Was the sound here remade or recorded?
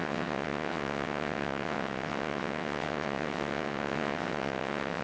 remade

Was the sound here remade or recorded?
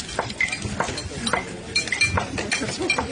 recorded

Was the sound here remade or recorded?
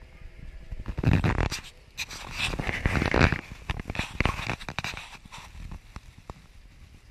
recorded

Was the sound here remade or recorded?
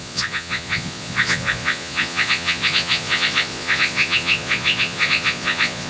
remade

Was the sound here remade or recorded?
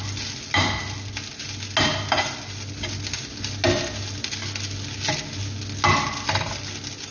recorded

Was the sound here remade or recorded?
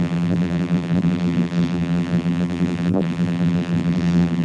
remade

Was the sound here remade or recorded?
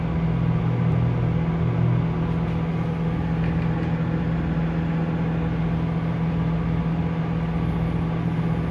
recorded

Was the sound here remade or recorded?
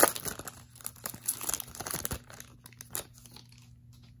recorded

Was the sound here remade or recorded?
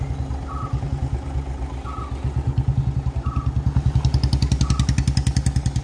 recorded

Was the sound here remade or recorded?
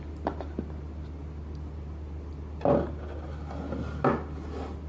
recorded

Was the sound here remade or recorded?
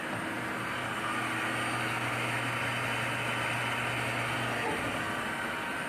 recorded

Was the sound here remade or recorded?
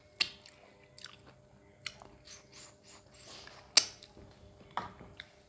recorded